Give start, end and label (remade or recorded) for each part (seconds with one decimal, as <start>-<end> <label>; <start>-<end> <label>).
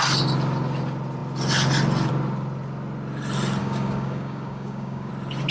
0.0-3.6 recorded; 3.6-5.1 remade; 5.1-5.5 recorded